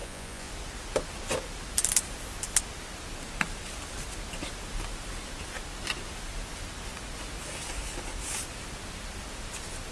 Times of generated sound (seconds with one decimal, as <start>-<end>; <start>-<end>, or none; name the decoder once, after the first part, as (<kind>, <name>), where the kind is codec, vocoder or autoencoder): 0.0-0.5 (vocoder, Vocos)